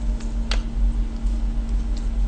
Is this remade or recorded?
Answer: recorded